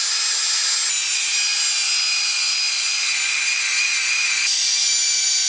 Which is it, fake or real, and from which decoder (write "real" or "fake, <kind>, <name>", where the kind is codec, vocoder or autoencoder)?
real